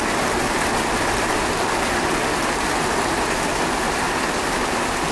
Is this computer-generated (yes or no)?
no